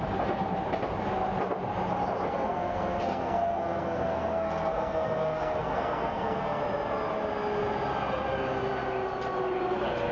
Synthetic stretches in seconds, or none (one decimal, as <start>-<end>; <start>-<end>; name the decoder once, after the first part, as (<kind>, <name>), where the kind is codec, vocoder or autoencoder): 2.3-6.6 (codec, SNAC)